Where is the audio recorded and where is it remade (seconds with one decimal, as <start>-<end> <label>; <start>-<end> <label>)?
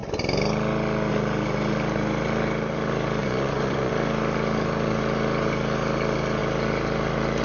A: 0.0-3.2 recorded; 3.2-3.9 remade; 3.9-7.4 recorded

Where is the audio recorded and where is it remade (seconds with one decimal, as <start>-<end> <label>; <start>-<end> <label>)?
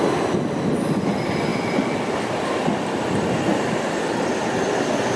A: 0.0-5.2 recorded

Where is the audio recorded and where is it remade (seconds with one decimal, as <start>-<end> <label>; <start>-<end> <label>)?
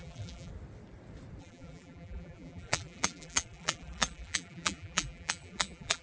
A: 0.0-0.5 remade; 0.5-1.4 recorded; 1.4-6.0 remade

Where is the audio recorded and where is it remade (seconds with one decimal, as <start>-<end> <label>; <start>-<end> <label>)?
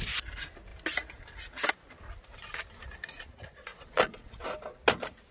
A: 0.0-3.7 recorded; 3.7-4.3 remade; 4.3-5.3 recorded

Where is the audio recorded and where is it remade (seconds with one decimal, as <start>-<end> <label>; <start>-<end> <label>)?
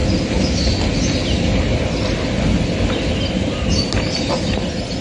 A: 0.0-5.0 recorded